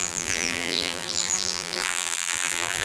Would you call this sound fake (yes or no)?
yes